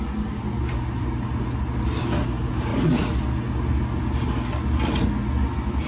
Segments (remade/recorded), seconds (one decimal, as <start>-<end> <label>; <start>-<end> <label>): 0.0-5.9 recorded